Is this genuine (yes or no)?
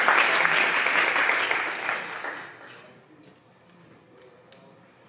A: yes